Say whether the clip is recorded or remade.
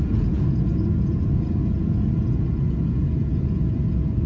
remade